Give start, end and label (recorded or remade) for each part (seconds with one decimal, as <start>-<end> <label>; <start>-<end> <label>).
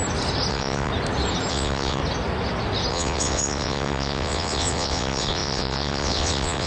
0.0-0.5 recorded; 0.5-0.9 remade; 0.9-1.5 recorded; 1.5-2.0 remade; 2.0-2.9 recorded; 2.9-6.7 remade